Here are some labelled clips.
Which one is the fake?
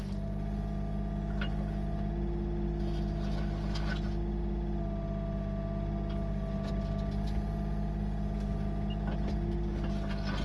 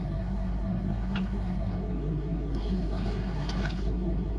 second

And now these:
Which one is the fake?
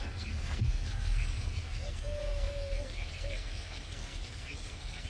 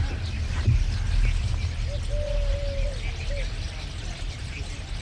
first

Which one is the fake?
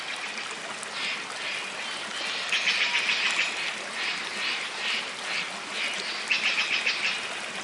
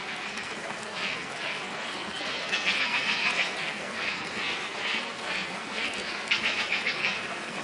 second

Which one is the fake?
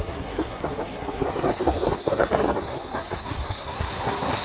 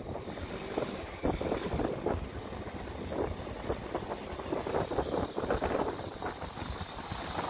first